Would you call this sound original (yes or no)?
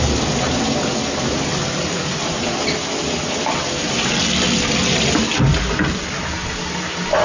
yes